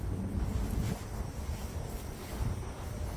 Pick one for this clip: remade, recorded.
recorded